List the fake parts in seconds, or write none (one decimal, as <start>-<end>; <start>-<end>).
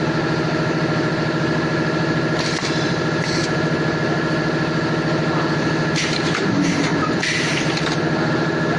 2.6-3.4; 6.9-8.3